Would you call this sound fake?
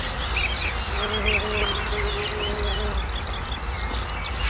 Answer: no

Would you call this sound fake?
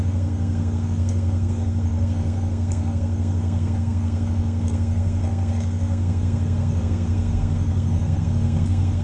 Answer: yes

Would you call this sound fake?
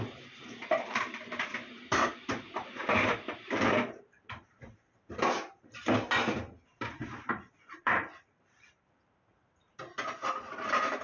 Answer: yes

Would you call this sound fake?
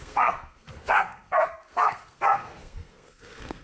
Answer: yes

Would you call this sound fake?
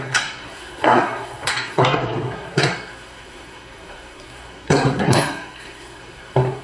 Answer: yes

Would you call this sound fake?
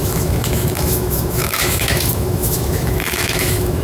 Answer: yes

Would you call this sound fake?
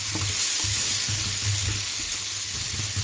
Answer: no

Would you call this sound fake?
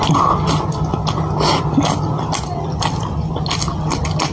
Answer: no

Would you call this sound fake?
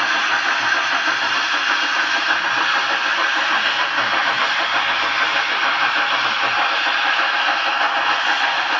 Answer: no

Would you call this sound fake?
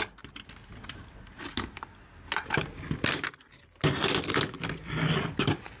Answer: no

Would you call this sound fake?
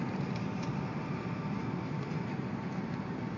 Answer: no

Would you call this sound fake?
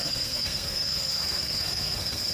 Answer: yes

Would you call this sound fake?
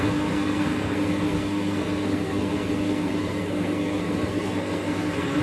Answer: yes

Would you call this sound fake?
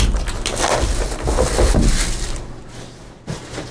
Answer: no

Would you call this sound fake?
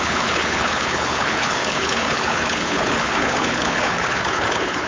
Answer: yes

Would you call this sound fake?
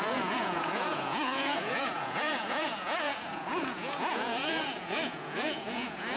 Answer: yes